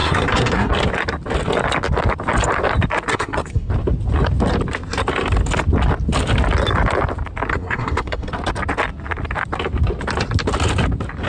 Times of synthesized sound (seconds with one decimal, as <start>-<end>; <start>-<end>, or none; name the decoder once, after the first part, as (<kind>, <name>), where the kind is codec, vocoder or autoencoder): 0.0-0.7 (codec, SNAC); 3.1-3.7; 7.5-8.3